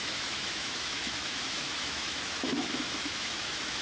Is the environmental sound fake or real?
fake